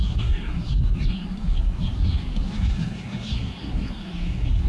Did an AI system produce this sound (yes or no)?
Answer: yes